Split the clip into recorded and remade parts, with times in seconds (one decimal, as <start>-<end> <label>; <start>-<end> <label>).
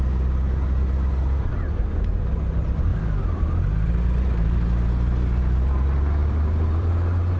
0.0-2.9 recorded; 2.9-3.5 remade; 3.5-6.2 recorded; 6.2-6.9 remade; 6.9-7.4 recorded